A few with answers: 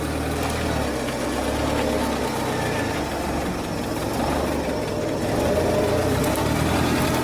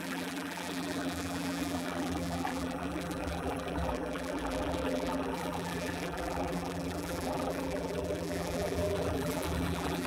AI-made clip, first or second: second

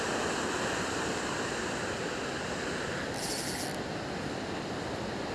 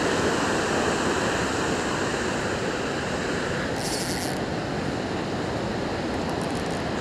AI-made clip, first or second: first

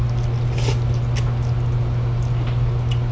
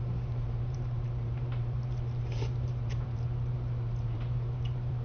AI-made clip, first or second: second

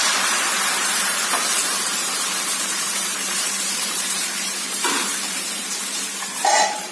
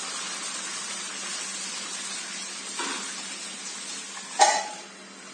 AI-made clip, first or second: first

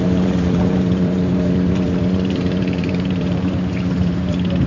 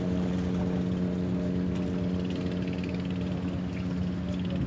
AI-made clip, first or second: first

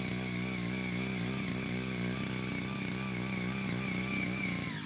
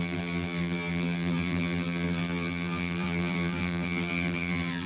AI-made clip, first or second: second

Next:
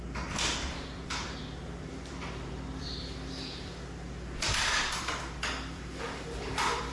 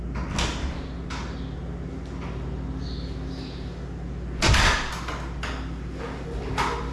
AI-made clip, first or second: first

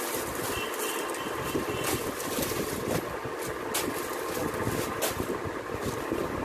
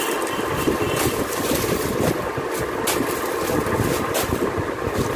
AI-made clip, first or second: second